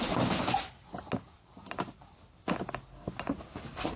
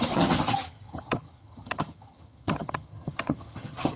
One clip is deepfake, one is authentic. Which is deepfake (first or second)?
second